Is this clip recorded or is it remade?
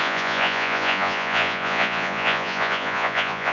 remade